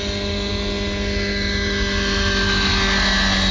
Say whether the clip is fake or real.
real